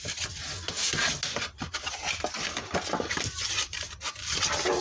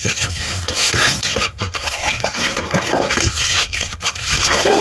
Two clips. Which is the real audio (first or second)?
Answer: first